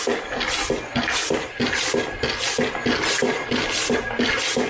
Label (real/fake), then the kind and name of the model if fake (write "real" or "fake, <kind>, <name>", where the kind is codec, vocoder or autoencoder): real